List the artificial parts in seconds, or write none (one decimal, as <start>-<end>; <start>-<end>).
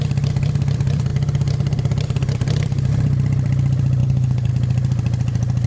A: 4.0-4.5